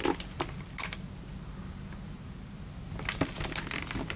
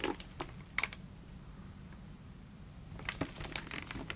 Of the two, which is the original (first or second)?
first